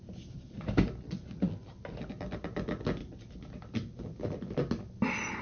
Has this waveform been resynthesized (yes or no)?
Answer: no